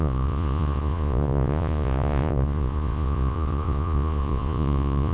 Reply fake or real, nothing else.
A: fake